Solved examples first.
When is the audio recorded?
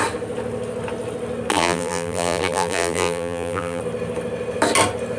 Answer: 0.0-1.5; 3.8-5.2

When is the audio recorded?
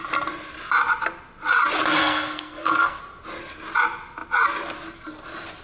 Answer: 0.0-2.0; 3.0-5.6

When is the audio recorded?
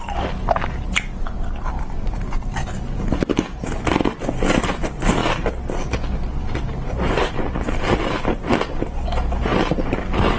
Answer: 0.0-10.4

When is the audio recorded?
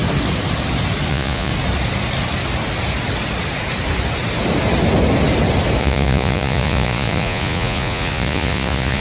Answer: 0.0-1.1; 1.5-5.8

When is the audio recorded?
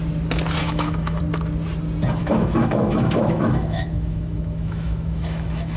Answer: 0.0-0.6; 1.2-2.2